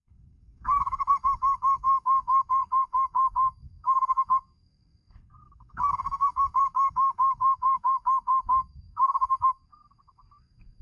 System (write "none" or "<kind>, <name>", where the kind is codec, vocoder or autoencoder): codec, SNAC